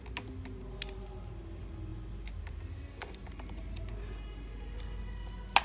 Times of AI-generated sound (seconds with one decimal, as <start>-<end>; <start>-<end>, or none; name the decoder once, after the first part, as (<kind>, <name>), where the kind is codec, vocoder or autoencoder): none